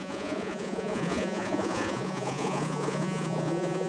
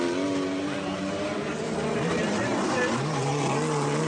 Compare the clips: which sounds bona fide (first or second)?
second